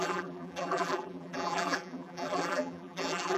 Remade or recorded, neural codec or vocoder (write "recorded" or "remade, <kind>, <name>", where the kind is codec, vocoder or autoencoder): remade, vocoder, BigVGAN v2